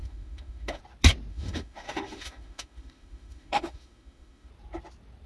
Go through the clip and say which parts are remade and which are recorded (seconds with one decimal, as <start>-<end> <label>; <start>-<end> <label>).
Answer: 0.0-0.8 remade; 0.8-1.3 recorded; 1.3-4.5 remade; 4.5-5.3 recorded

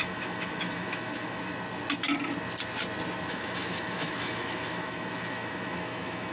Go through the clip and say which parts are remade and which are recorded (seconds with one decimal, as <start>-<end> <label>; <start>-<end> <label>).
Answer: 0.0-1.5 remade; 1.5-3.3 recorded; 3.3-6.3 remade

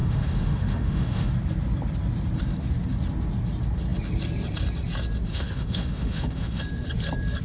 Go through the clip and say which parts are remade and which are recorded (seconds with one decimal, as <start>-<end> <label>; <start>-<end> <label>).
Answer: 0.0-1.3 remade; 1.3-5.3 recorded; 5.3-6.6 remade; 6.6-7.4 recorded

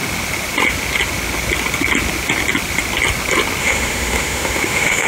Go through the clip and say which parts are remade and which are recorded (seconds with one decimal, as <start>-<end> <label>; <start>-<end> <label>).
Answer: 0.0-3.6 recorded; 3.6-5.1 remade